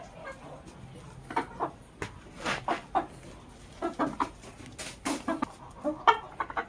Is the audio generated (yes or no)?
no